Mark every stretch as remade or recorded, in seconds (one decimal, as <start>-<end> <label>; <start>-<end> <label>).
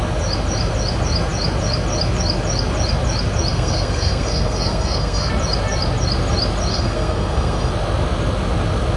0.0-3.5 recorded; 3.5-5.3 remade; 5.3-6.7 recorded; 6.7-7.7 remade; 7.7-9.0 recorded